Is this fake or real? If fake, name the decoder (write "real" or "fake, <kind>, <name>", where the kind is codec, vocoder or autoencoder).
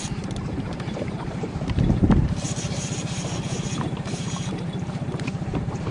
fake, vocoder, BigVGAN v2